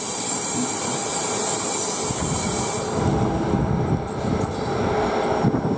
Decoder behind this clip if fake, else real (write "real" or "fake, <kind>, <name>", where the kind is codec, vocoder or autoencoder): real